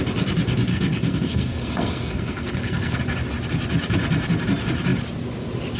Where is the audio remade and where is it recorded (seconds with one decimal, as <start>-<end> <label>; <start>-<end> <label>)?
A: 0.0-0.7 recorded; 0.7-3.0 remade; 3.0-5.8 recorded